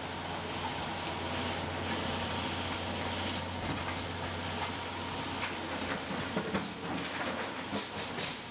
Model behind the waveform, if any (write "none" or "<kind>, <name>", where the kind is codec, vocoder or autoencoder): none